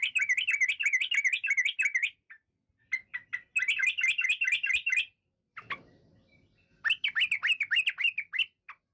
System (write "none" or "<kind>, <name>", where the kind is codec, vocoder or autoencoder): none